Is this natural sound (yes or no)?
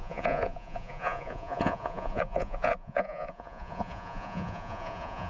no